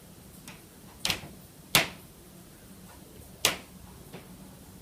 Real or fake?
real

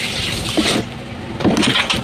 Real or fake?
real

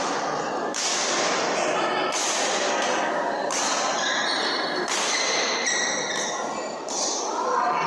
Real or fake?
real